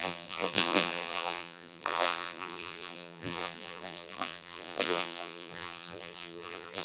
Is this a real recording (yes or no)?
no